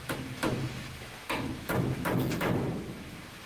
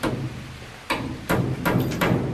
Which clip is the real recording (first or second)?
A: second